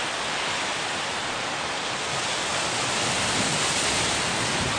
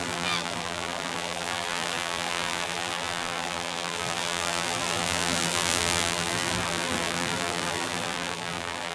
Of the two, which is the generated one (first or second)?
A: second